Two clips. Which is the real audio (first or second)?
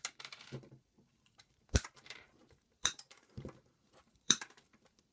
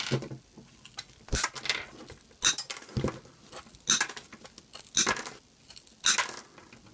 second